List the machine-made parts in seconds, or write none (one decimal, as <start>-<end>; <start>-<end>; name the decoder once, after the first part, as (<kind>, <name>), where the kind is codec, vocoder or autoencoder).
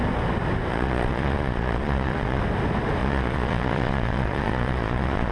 0.7-2.4 (vocoder, Vocos); 3.0-5.3